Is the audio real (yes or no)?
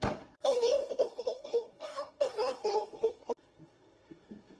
no